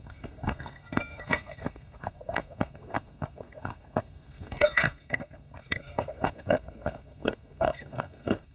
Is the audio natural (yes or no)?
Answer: no